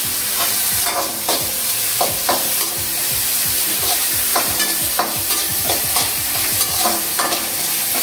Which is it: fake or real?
fake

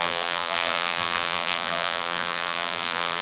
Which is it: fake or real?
fake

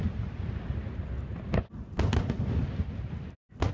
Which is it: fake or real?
real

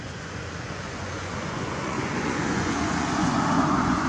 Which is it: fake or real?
fake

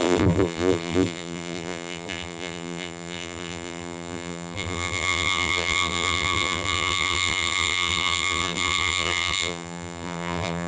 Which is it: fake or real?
fake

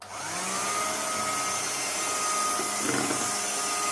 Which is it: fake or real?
real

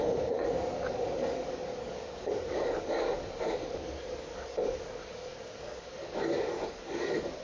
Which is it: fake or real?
fake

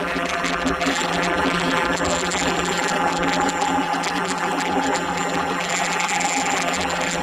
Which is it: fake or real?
fake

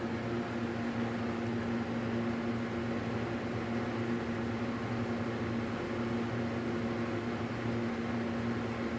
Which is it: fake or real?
real